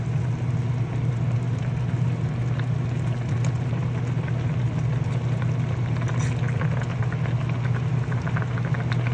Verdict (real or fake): real